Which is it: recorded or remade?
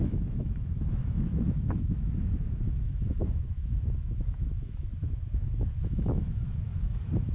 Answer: remade